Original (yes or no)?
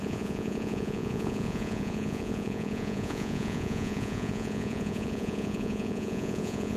no